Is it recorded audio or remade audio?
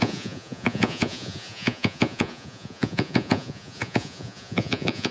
remade